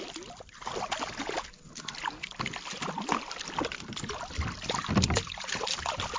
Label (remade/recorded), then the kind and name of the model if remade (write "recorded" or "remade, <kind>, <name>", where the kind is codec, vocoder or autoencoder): recorded